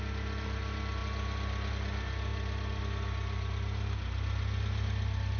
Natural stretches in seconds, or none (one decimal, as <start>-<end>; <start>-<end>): 0.0-5.4